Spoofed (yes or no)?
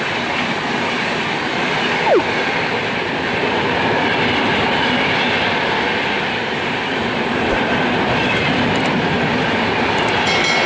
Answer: yes